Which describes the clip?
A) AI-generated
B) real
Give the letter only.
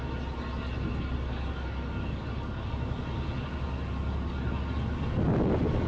B